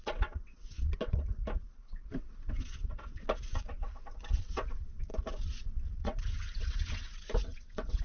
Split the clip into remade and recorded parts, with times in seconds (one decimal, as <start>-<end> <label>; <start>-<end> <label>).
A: 0.0-1.3 remade; 1.3-2.1 recorded; 2.1-5.1 remade; 5.1-6.0 recorded; 6.0-8.0 remade